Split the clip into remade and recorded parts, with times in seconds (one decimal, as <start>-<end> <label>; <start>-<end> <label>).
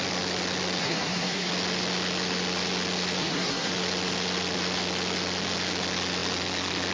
0.0-0.8 recorded; 0.8-1.5 remade; 1.5-3.2 recorded; 3.2-3.7 remade; 3.7-6.9 recorded